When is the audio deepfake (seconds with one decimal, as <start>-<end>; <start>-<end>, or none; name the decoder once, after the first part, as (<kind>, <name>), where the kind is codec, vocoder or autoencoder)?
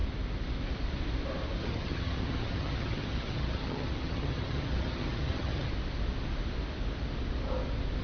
1.6-5.7 (vocoder, HiFi-GAN)